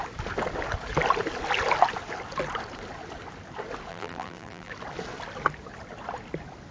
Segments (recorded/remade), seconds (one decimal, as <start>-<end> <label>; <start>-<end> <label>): 0.0-3.9 recorded; 3.9-4.7 remade; 4.7-6.7 recorded